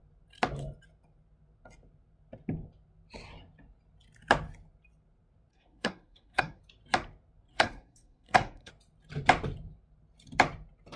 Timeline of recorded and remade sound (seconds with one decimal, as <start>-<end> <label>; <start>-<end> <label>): 0.0-5.5 recorded; 5.5-6.6 remade; 6.6-7.5 recorded; 7.5-8.7 remade; 8.7-11.0 recorded